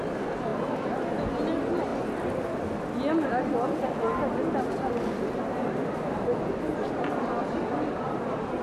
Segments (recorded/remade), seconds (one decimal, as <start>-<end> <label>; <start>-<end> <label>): 0.0-8.6 recorded